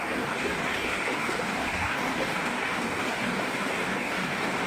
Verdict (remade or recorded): remade